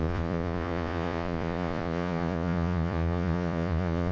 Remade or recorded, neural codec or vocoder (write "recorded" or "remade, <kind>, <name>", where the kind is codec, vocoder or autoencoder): remade, vocoder, Vocos